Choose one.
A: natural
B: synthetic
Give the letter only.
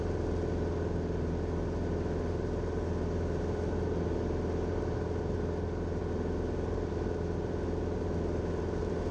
A